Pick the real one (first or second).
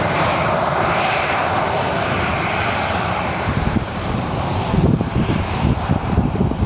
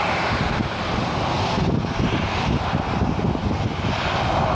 second